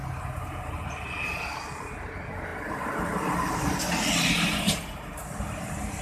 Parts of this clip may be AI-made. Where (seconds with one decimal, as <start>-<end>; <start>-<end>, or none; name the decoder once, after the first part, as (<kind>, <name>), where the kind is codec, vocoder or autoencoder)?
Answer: none